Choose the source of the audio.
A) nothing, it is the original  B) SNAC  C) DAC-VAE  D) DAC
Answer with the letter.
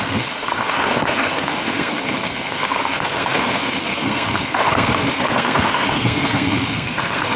B